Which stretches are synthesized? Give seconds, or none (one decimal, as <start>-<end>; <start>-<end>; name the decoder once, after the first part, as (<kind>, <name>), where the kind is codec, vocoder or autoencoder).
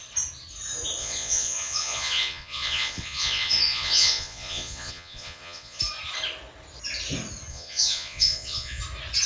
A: 1.0-5.8 (vocoder, Vocos); 7.5-8.8